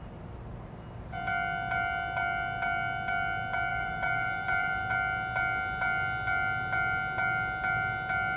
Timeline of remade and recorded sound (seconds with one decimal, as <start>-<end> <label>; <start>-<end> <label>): 0.0-3.7 recorded; 3.7-4.9 remade; 4.9-8.4 recorded